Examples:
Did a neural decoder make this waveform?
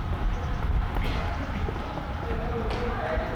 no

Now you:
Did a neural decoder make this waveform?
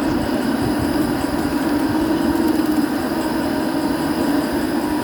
no